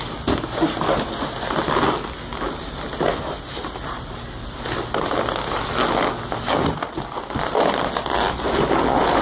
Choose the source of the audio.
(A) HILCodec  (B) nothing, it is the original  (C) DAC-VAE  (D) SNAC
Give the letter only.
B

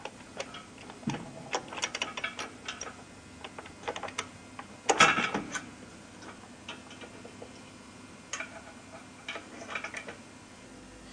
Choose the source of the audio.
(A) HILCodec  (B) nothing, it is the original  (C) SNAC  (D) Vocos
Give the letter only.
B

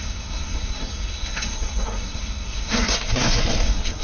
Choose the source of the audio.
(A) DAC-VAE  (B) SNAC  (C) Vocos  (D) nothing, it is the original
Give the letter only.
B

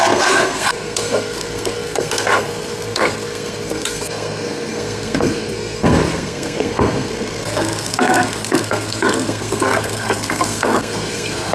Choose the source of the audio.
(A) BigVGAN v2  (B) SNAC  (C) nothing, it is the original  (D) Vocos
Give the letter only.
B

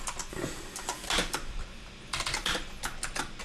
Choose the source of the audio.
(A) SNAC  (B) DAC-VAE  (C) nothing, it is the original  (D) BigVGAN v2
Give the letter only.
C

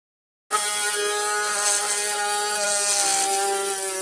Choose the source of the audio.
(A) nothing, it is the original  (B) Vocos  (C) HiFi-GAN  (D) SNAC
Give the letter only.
A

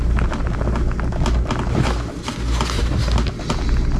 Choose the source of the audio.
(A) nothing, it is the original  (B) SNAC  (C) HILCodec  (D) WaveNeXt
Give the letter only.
A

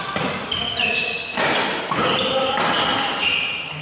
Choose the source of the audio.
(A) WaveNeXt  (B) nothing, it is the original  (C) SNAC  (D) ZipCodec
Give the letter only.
B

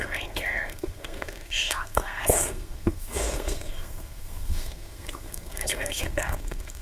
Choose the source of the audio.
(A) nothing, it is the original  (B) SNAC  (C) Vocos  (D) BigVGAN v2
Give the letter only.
B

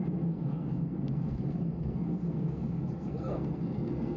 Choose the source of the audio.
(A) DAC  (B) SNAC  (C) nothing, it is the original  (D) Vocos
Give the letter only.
B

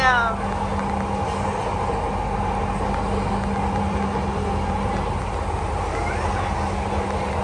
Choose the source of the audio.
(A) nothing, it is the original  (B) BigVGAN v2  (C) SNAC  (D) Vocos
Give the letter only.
A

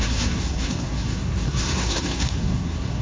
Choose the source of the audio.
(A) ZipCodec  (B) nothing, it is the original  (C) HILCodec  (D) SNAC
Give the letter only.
D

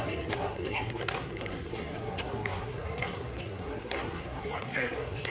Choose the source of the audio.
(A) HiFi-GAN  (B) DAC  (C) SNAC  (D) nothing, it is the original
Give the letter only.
C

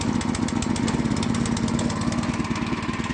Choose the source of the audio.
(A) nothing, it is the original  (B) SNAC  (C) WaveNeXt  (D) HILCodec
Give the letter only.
A